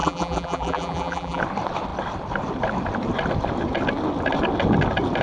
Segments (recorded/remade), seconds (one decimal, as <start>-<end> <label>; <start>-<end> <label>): 0.0-1.4 remade; 1.4-5.2 recorded